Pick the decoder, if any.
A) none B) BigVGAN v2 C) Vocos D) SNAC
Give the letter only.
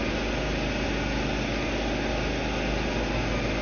A